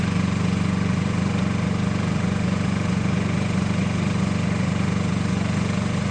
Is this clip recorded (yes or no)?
no